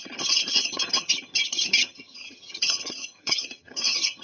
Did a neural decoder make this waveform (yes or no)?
yes